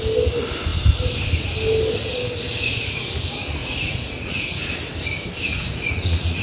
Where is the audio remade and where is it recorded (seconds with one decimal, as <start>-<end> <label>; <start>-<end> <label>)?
0.0-3.6 recorded; 3.6-4.5 remade; 4.5-5.5 recorded; 5.5-6.4 remade